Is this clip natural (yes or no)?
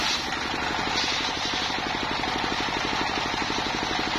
yes